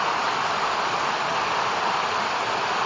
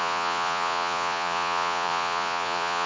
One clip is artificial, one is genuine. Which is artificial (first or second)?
second